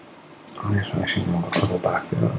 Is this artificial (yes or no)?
no